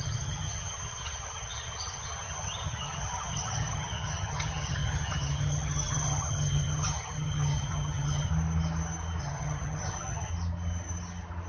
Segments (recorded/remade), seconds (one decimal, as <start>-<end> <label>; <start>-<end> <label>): 0.0-8.3 remade; 8.3-9.2 recorded; 9.2-10.3 remade; 10.3-11.5 recorded